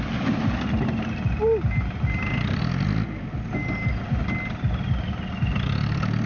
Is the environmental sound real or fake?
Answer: real